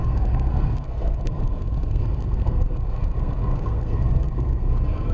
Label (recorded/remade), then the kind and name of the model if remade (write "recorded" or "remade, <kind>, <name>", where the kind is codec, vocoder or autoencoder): remade, codec, SNAC